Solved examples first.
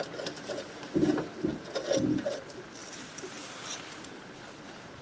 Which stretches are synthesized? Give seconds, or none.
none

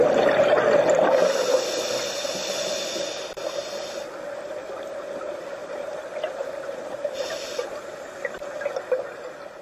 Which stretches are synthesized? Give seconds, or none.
5.6-8.4 (vocoder, BigVGAN v2)

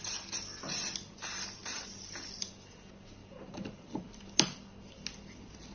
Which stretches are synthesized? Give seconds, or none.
3.2-4.2 (vocoder, BigVGAN v2)

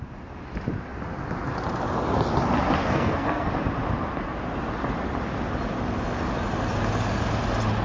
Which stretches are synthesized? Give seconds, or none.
2.8-3.5 (codec, SNAC)

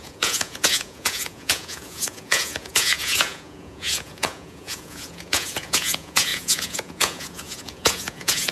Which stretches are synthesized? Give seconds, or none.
0.0-8.5 (vocoder, Vocos)

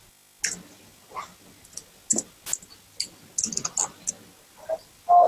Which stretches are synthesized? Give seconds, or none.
none

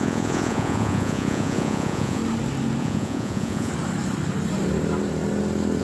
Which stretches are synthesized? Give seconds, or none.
0.0-2.2 (vocoder, Vocos); 2.8-3.7